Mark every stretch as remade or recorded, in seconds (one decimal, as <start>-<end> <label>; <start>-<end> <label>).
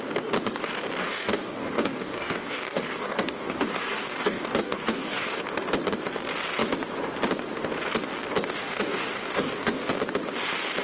0.0-1.0 recorded; 1.0-5.4 remade; 5.4-8.6 recorded; 8.6-9.8 remade; 9.8-10.8 recorded